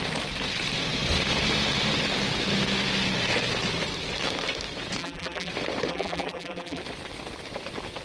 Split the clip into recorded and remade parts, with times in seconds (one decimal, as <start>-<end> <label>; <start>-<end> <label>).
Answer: 0.0-5.0 recorded; 5.0-5.5 remade; 5.5-5.9 recorded; 5.9-6.8 remade; 6.8-8.0 recorded